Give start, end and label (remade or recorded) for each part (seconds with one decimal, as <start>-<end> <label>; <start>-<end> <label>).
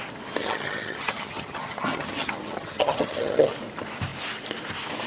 0.0-0.4 recorded; 0.4-3.5 remade; 3.5-5.1 recorded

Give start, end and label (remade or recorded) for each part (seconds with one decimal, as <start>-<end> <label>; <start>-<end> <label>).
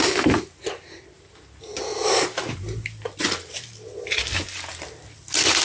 0.0-5.6 recorded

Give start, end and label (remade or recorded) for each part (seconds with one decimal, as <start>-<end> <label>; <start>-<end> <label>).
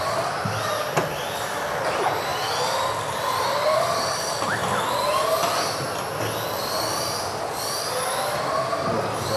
0.0-9.4 recorded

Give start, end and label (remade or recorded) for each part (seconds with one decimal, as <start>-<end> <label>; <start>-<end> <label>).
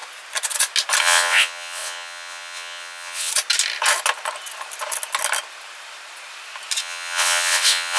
0.0-1.0 recorded; 1.0-3.3 remade; 3.3-6.8 recorded; 6.8-8.0 remade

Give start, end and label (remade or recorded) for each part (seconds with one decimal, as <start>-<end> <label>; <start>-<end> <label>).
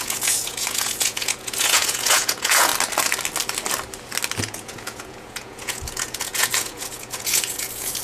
0.0-2.7 remade; 2.7-4.4 recorded; 4.4-8.0 remade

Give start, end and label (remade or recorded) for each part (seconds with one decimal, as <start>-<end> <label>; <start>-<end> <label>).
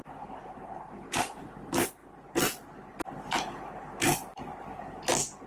0.0-5.5 recorded